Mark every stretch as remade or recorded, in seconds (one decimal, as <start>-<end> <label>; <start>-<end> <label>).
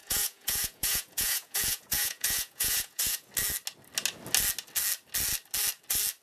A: 0.0-3.3 remade; 3.3-6.2 recorded